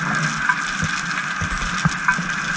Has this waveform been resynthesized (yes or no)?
no